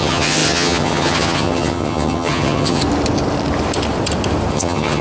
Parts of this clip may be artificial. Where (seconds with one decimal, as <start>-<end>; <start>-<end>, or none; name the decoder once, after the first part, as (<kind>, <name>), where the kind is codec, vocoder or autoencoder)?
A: 0.0-2.8 (vocoder, HiFi-GAN); 4.5-5.0